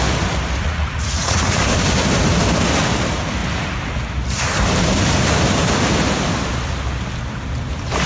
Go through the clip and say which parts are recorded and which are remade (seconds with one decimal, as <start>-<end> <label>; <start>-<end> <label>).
0.0-0.6 recorded; 0.6-1.6 remade; 1.6-8.1 recorded